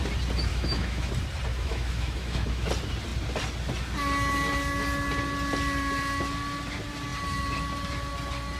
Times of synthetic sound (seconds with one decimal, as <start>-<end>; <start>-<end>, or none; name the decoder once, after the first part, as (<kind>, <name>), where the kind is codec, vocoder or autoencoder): 0.5-1.1 (autoencoder, DAC-VAE); 1.5-2.7